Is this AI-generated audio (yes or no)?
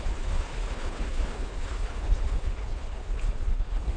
yes